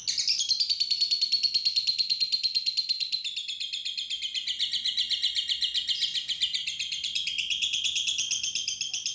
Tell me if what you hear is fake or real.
real